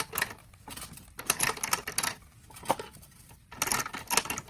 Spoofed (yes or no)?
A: no